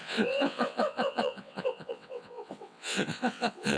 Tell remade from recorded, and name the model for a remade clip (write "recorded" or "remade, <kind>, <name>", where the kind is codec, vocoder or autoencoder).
remade, vocoder, WaveNeXt